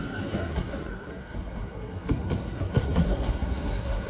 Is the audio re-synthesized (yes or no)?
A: yes